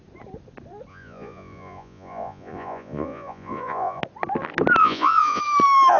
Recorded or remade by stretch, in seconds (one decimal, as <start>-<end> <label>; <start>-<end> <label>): 0.0-0.9 recorded; 0.9-4.0 remade; 4.0-4.8 recorded; 4.8-5.4 remade; 5.4-6.0 recorded